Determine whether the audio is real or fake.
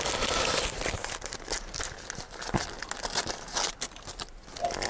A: real